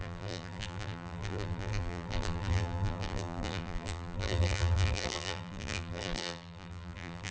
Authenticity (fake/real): fake